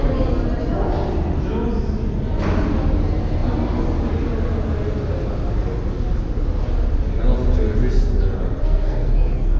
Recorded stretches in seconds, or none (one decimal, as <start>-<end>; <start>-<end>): 0.0-8.6